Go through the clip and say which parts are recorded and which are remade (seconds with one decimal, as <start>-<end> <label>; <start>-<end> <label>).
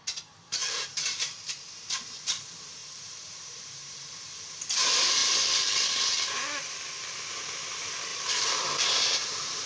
0.0-0.6 recorded; 0.6-1.7 remade; 1.7-2.8 recorded; 2.8-4.1 remade; 4.1-8.1 recorded; 8.1-9.7 remade